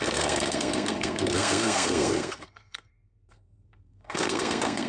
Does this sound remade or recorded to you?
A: remade